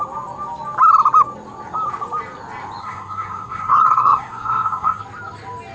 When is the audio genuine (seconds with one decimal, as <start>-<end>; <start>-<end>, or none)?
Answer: 0.0-2.8; 5.0-5.7